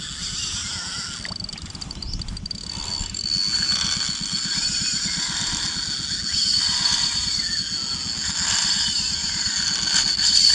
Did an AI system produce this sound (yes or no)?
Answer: no